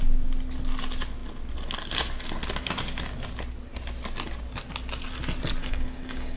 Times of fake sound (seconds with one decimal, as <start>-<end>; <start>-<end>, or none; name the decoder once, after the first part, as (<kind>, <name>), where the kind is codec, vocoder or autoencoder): 5.6-6.4 (codec, DAC)